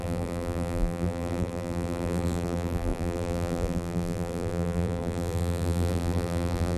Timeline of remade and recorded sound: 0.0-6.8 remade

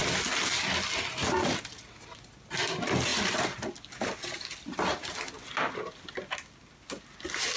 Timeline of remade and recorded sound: 0.0-7.6 recorded

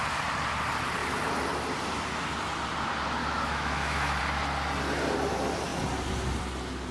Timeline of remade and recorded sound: 0.0-3.2 recorded; 3.2-4.2 remade; 4.2-6.9 recorded

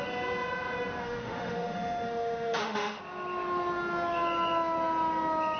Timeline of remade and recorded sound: 0.0-1.0 recorded; 1.0-3.0 remade; 3.0-5.6 recorded